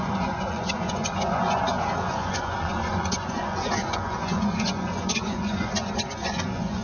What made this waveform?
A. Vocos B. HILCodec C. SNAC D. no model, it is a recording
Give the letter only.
A